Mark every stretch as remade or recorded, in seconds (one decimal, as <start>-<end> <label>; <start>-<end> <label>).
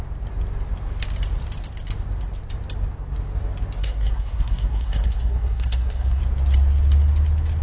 0.0-3.8 recorded; 3.8-6.2 remade; 6.2-7.6 recorded